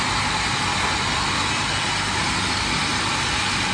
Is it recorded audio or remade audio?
recorded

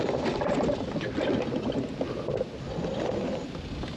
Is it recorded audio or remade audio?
recorded